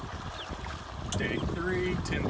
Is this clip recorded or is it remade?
recorded